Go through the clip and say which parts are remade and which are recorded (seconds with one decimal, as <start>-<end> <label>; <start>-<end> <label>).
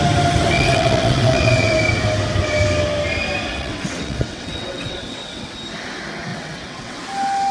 0.0-0.5 recorded; 0.5-1.7 remade; 1.7-3.5 recorded; 3.5-5.5 remade; 5.5-6.3 recorded; 6.3-7.0 remade; 7.0-7.5 recorded